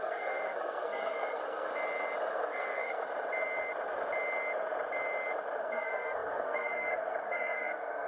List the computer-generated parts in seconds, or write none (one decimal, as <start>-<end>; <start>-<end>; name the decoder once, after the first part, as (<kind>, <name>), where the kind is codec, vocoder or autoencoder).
0.0-1.7 (codec, SNAC); 2.3-3.0; 5.6-8.1